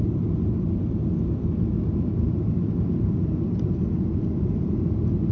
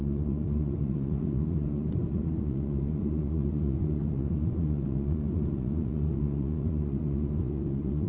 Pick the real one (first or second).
first